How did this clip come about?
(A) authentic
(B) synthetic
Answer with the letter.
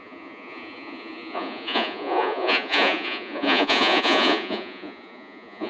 B